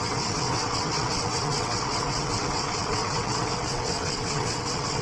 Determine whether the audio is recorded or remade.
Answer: remade